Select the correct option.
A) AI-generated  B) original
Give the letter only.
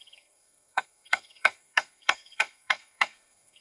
A